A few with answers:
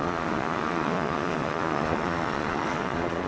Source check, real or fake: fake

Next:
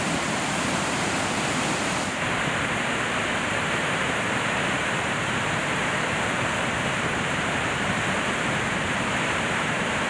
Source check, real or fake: fake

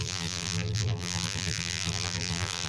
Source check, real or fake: fake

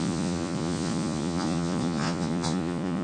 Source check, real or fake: fake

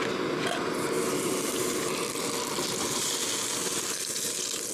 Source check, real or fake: real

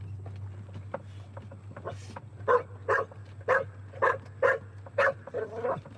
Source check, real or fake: real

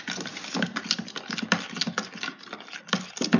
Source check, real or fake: real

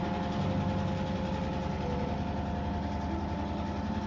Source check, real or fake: real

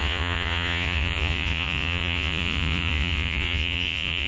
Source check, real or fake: fake